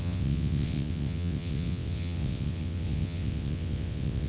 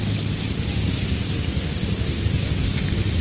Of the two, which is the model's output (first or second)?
first